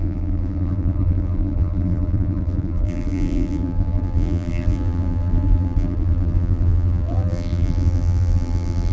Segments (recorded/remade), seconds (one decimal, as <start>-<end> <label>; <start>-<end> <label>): 0.0-8.9 remade